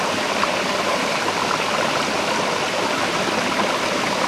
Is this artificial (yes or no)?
no